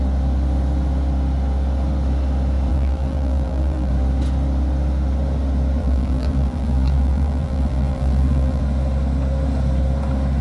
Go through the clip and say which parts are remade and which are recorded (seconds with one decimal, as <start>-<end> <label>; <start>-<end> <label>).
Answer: 0.0-2.7 recorded; 2.7-3.9 remade; 3.9-5.8 recorded; 5.8-8.6 remade; 8.6-10.4 recorded